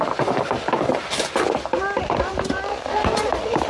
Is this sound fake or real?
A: fake